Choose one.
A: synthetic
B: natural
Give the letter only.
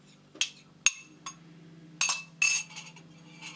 B